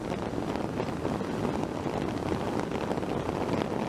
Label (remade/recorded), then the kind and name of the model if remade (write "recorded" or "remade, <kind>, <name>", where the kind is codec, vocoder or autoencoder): recorded